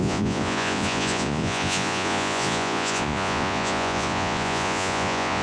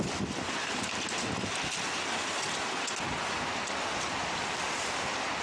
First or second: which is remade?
first